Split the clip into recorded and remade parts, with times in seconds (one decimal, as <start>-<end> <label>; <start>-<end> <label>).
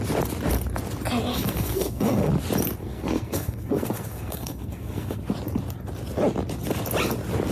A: 0.0-1.3 recorded; 1.3-2.3 remade; 2.3-2.8 recorded; 2.8-5.2 remade; 5.2-7.5 recorded